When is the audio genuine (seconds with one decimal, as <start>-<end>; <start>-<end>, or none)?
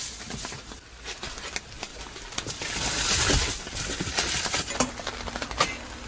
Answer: 0.0-1.9; 2.5-6.1